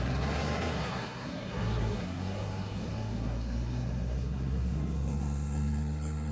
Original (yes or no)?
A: no